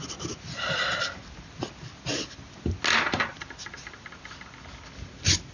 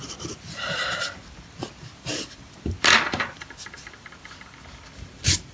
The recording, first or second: first